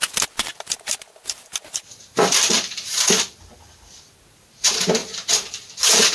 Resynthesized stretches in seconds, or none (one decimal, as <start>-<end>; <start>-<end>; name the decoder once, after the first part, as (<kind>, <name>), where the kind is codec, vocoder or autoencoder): 0.5-3.1 (vocoder, BigVGAN v2); 5.0-6.1